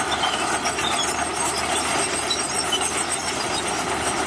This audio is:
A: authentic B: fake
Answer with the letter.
A